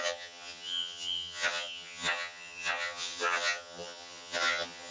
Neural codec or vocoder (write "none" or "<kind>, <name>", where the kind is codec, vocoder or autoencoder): vocoder, HiFi-GAN